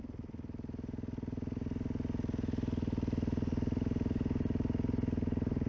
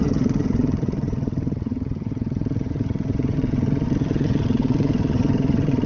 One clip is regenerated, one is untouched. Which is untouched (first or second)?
first